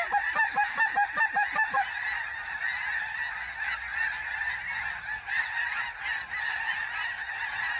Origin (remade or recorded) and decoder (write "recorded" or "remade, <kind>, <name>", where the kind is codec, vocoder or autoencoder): recorded